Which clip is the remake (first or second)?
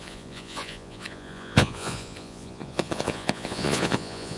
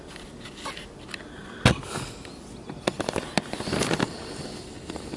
first